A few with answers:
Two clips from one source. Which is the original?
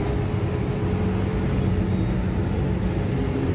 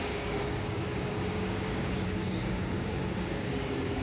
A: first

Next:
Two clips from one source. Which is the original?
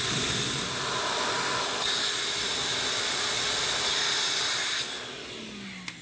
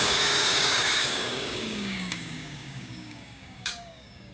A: first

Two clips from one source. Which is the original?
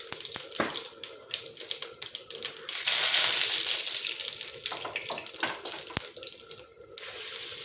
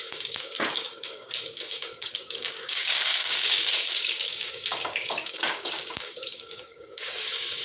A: first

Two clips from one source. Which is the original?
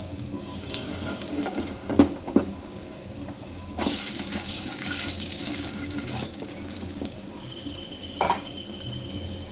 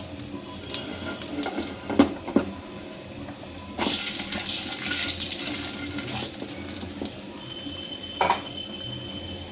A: second